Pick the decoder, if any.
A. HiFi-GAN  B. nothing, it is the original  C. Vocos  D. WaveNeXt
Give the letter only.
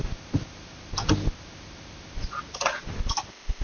B